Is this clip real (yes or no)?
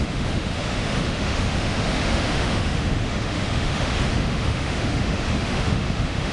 no